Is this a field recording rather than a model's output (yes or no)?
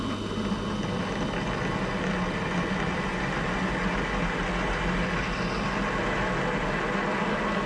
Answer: yes